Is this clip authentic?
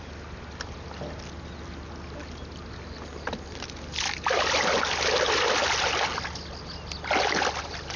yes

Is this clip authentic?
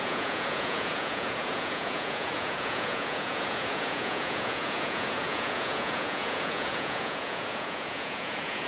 no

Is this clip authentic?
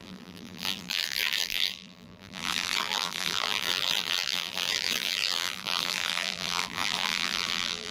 no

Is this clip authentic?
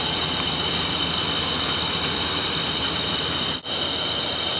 no